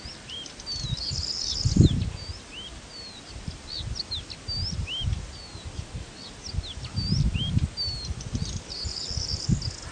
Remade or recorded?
recorded